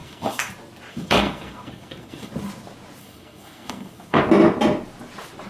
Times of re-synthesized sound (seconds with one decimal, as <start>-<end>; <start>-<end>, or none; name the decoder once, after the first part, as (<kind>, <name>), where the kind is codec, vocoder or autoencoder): 0.0-0.5 (codec, SNAC); 0.9-2.3; 3.0-4.2